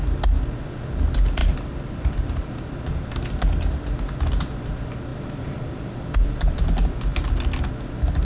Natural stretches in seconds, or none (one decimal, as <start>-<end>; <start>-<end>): 0.0-1.4; 2.5-5.1; 5.8-8.2